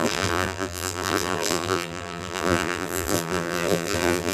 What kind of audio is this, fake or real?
fake